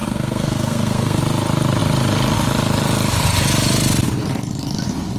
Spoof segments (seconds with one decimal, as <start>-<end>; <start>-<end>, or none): 0.0-1.2